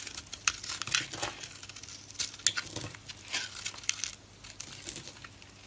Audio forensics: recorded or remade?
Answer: recorded